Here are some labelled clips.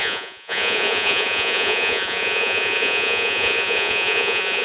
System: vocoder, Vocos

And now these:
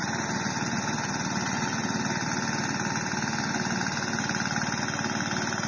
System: none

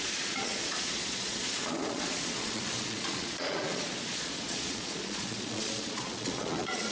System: vocoder, Vocos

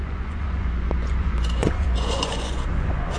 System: vocoder, Vocos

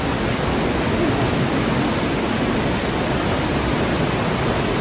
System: none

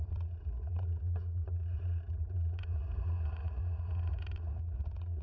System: vocoder, Vocos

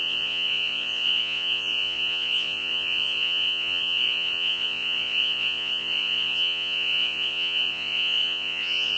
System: vocoder, Vocos